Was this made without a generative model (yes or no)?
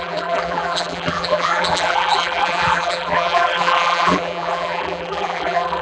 no